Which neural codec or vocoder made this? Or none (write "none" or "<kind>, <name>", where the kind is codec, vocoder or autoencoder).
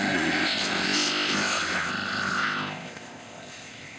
codec, ZipCodec